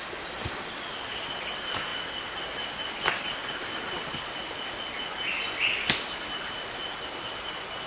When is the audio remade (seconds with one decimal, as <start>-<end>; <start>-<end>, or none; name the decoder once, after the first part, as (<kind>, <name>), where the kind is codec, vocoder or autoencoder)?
none